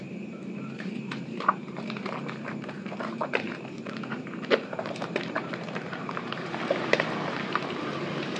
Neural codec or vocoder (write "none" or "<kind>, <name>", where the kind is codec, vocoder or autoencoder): vocoder, BigVGAN v2